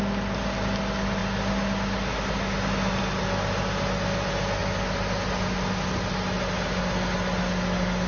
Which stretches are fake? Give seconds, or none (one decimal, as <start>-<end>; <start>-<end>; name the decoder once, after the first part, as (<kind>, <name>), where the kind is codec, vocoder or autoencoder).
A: none